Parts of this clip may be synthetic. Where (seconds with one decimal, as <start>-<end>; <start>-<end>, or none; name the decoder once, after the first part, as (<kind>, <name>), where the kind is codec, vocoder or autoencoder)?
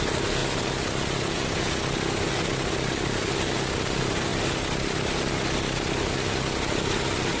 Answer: 4.3-7.4 (vocoder, BigVGAN v2)